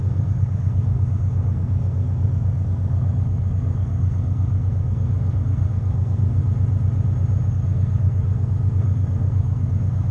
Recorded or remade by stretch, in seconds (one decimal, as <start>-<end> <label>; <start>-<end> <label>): 0.0-6.4 remade; 6.4-7.5 recorded; 7.5-10.1 remade